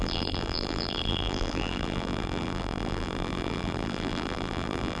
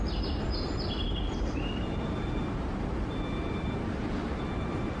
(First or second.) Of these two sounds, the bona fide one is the second